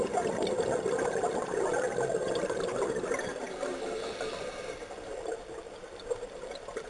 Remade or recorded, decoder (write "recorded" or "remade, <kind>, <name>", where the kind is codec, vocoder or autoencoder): recorded